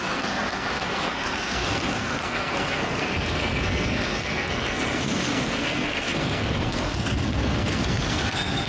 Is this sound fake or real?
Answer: fake